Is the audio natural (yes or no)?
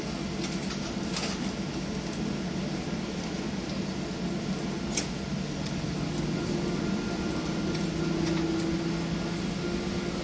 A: yes